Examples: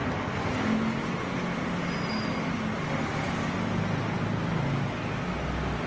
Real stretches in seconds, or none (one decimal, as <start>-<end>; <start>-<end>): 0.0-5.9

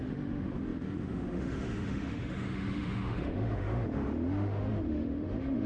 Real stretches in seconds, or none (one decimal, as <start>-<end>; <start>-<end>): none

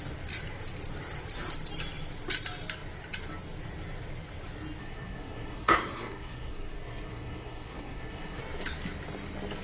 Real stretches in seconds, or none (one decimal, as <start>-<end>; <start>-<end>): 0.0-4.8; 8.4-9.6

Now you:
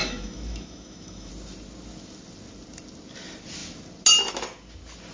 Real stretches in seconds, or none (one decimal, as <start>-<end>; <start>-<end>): 1.3-5.1

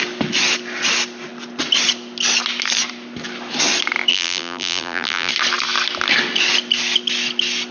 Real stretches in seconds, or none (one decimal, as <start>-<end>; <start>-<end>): 0.0-4.1; 5.3-7.7